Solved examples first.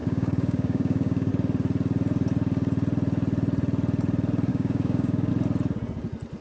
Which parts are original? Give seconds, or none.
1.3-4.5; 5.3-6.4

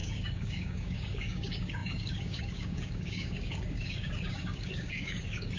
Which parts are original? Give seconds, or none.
none